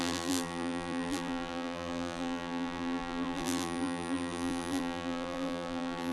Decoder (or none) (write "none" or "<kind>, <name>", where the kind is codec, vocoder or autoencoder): vocoder, BigVGAN v2